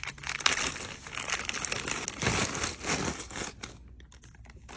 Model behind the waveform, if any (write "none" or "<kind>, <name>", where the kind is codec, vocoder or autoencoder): none